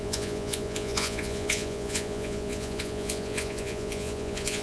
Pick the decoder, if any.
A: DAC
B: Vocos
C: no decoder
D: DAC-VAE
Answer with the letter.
B